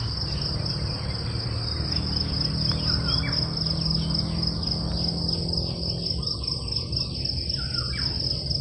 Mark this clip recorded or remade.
recorded